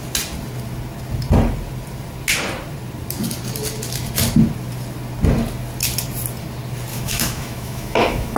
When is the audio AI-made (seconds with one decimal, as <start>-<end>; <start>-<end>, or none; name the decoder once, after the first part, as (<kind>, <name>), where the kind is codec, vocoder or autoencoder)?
6.9-8.4 (autoencoder, DAC-VAE)